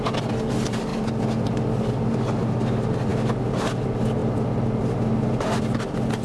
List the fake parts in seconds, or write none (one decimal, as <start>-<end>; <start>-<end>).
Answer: none